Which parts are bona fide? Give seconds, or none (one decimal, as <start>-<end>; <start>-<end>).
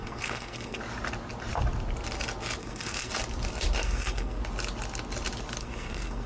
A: 0.8-2.6; 3.1-3.8; 4.4-5.6